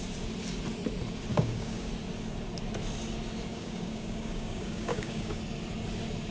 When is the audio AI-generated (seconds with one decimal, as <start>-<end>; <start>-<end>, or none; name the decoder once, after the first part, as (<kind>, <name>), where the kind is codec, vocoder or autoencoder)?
1.3-1.9 (codec, DAC); 3.5-5.4